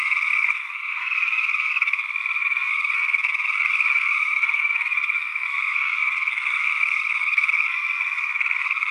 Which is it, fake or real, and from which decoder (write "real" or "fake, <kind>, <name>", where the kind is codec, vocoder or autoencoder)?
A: fake, codec, SNAC